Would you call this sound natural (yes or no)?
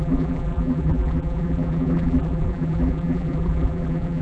no